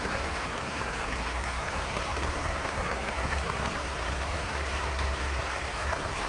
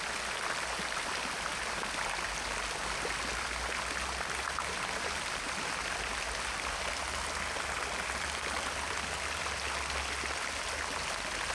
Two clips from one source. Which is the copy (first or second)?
first